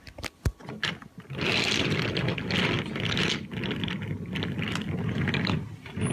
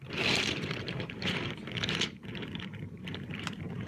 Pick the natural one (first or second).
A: first